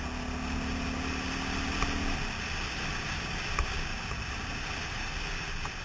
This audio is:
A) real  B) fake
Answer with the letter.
A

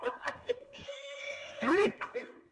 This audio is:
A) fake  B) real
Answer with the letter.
A